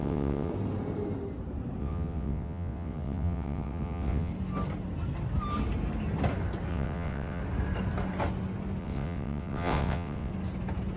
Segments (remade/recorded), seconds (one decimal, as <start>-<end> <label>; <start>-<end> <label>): 0.0-0.5 remade; 0.5-1.8 recorded; 1.8-4.3 remade; 4.3-6.7 recorded; 6.7-7.4 remade; 7.4-8.8 recorded; 8.8-10.3 remade; 10.3-11.0 recorded